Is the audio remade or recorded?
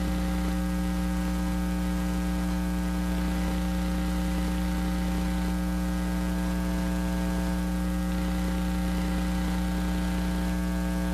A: recorded